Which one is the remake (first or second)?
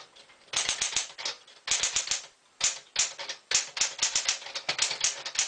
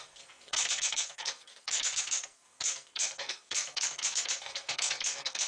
second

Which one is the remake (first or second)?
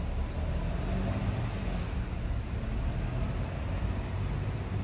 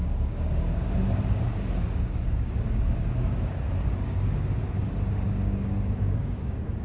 second